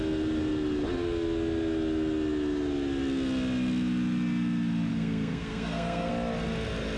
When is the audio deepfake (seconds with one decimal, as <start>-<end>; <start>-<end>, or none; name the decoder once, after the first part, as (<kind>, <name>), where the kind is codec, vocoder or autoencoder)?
4.9-6.1 (codec, SNAC)